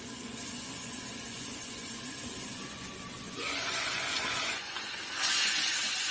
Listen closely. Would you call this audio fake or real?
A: fake